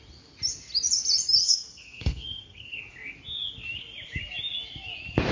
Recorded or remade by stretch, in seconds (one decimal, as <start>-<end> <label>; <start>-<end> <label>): 0.0-1.4 recorded; 1.4-2.8 remade; 2.8-5.3 recorded